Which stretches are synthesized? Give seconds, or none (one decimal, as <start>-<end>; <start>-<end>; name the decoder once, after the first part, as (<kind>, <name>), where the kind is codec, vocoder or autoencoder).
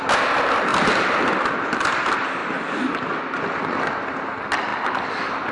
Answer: none